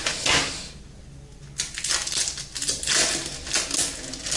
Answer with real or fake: real